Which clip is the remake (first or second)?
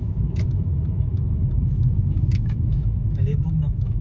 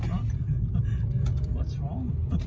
first